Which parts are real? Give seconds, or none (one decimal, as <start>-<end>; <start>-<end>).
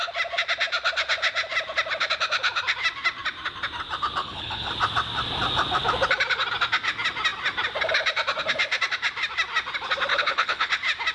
0.0-4.2; 4.7-10.1; 10.7-11.1